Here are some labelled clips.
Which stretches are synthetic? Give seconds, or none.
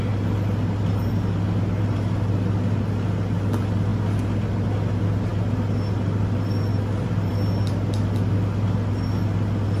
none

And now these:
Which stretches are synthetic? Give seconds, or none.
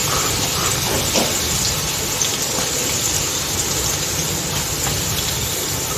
none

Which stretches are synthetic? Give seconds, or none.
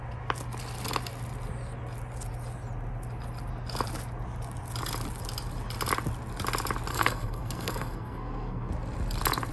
6.9-8.7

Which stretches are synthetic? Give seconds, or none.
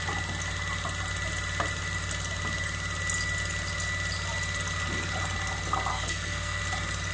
5.9-6.6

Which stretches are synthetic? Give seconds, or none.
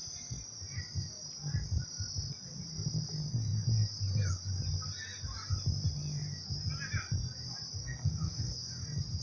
7.8-8.7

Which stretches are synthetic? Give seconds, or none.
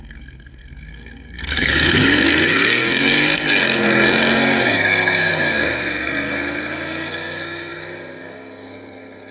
0.0-9.3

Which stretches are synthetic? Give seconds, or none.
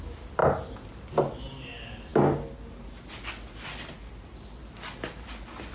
none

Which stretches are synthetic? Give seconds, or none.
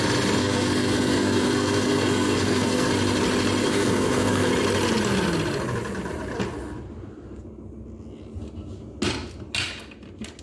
0.4-2.9; 3.6-4.5